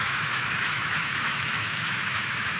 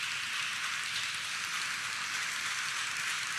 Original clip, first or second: second